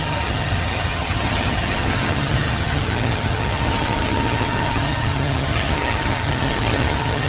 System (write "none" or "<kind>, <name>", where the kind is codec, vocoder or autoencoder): vocoder, HiFi-GAN